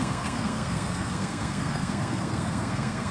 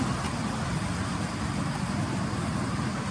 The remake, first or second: first